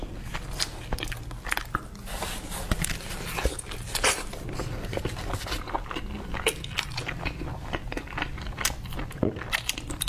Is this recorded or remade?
recorded